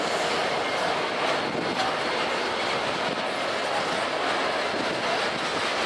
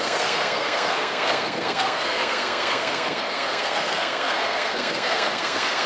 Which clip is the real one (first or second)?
first